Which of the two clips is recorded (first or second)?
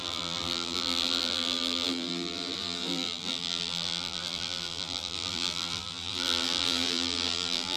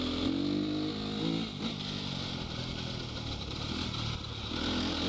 second